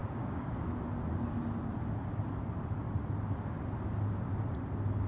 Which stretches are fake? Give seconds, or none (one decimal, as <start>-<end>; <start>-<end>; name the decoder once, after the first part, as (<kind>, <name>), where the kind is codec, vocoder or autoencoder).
0.0-0.5 (codec, DAC)